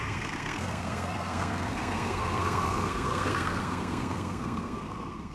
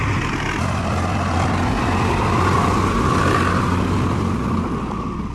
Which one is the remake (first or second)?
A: first